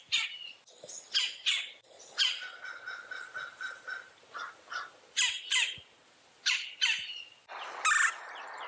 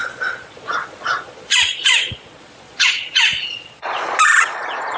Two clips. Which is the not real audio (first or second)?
second